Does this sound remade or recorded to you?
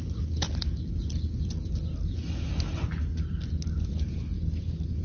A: recorded